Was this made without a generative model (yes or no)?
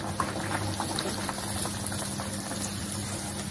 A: yes